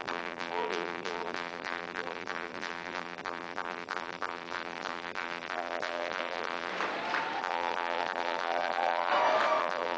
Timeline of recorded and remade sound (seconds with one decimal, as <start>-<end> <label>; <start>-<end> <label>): 0.0-6.7 remade; 6.7-7.4 recorded; 7.4-9.1 remade; 9.1-9.6 recorded; 9.6-10.0 remade